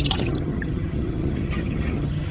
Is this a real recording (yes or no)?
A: no